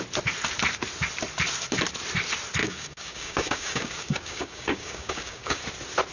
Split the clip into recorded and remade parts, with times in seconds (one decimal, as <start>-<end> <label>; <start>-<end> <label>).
0.0-2.6 recorded; 2.6-5.6 remade; 5.6-6.1 recorded